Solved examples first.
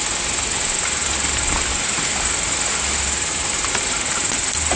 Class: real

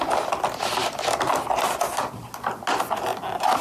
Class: real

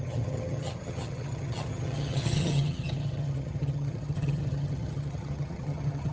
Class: fake